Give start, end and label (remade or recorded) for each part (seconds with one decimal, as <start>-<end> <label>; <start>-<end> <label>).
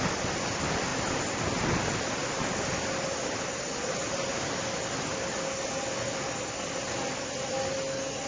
0.0-8.3 recorded